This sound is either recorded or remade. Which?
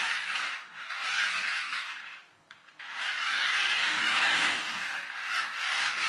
remade